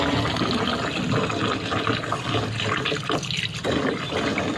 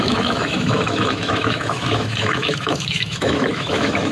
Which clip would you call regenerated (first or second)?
second